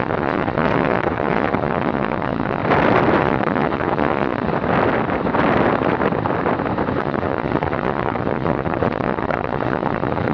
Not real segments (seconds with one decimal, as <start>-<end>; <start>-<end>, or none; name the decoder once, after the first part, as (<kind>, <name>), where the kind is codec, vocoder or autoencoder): 0.0-2.6 (vocoder, Vocos); 3.2-4.5; 7.0-10.3

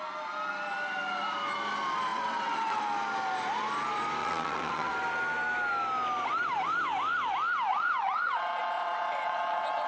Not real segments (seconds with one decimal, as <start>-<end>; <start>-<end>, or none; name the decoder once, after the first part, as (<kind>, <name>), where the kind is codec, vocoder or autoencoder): 2.1-2.8 (vocoder, WaveNeXt); 4.2-4.9; 7.7-9.9

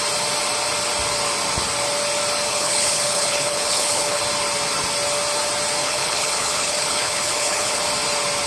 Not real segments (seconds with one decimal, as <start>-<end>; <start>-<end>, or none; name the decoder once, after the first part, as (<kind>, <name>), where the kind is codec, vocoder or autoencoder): 2.5-4.2 (codec, HILCodec); 5.8-7.8

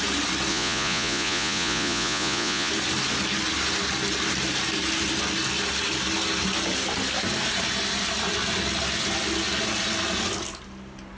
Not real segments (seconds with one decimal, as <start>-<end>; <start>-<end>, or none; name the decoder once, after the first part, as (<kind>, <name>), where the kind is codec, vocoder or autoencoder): 0.5-2.7 (vocoder, Vocos)

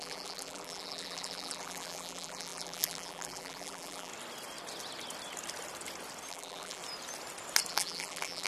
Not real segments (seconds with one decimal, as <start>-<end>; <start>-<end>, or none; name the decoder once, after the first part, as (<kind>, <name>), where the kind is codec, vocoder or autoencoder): 0.0-4.1 (vocoder, BigVGAN v2); 6.3-6.8; 7.7-8.5